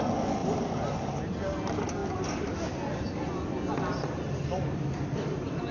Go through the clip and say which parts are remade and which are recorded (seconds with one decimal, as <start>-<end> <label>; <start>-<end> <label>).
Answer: 0.0-5.7 recorded